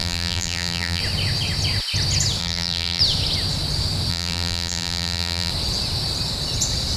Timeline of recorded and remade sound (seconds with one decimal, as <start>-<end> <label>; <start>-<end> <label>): 0.0-1.0 remade; 1.0-2.4 recorded; 2.4-3.0 remade; 3.0-4.1 recorded; 4.1-5.5 remade; 5.5-7.0 recorded